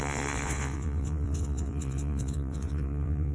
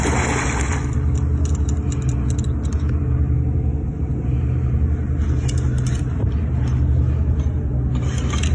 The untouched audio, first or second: second